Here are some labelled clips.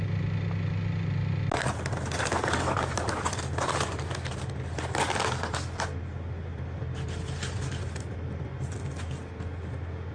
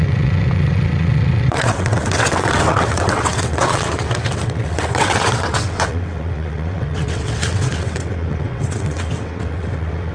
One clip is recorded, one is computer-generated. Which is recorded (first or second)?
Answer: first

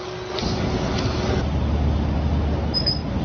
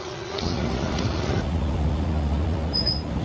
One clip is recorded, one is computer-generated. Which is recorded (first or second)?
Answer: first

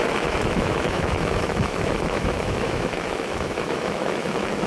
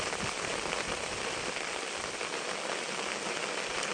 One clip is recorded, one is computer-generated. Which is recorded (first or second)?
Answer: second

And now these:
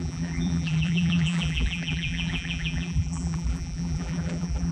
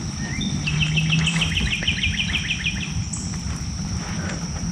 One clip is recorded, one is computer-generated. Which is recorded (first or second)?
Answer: second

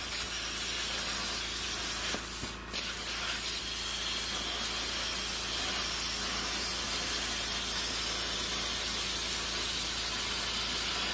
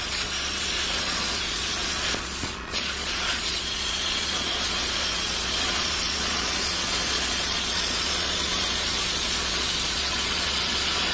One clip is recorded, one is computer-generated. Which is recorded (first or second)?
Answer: first